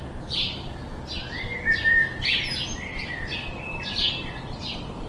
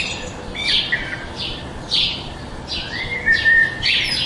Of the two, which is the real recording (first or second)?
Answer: first